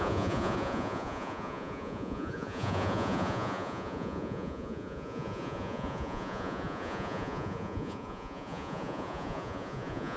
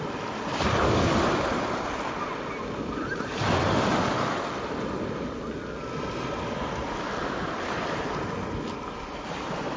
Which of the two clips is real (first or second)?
second